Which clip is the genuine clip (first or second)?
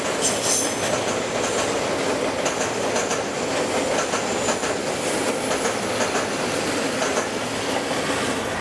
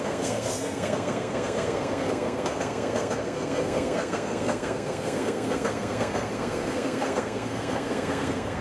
first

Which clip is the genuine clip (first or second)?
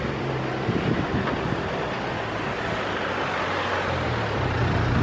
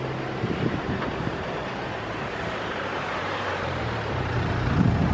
first